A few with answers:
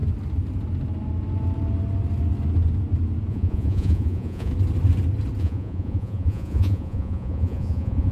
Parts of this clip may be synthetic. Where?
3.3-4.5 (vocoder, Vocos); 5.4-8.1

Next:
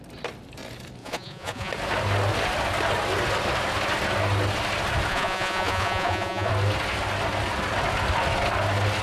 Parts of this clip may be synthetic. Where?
1.0-1.7 (vocoder, Vocos); 5.1-6.5

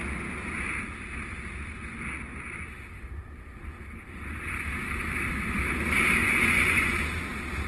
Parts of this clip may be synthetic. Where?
6.2-7.0 (vocoder, Vocos)

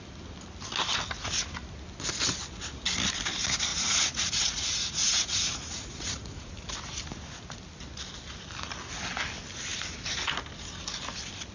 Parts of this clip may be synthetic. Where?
3.7-6.5 (vocoder, Vocos)

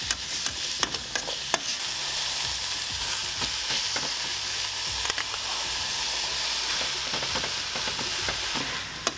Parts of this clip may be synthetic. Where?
none

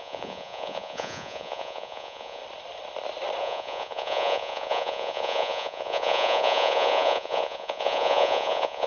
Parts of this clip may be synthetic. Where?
0.0-2.4 (vocoder, Vocos); 3.4-8.9

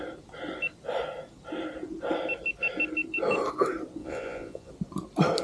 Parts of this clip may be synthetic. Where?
4.0-4.7 (vocoder, Vocos)